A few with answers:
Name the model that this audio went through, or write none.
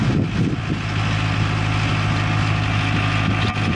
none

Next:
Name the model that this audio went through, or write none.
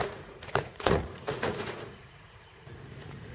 vocoder, Vocos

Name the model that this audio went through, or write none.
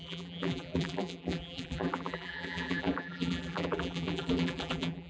vocoder, BigVGAN v2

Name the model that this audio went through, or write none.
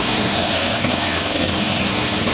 codec, SNAC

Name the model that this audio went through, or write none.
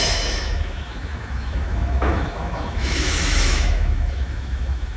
autoencoder, DAC-VAE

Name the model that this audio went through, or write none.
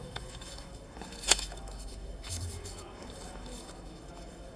autoencoder, DAC-VAE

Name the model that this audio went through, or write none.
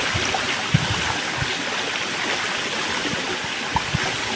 none